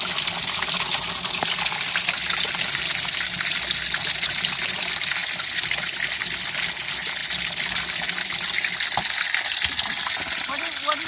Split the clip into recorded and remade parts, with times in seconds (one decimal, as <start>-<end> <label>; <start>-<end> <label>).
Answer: 0.0-11.1 recorded